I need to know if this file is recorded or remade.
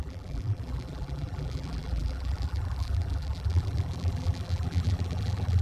remade